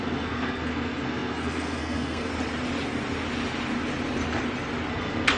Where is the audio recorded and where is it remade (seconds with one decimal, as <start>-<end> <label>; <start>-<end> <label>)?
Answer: 0.0-2.3 remade; 2.3-4.9 recorded; 4.9-5.4 remade